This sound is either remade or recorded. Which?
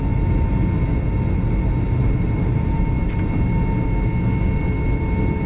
recorded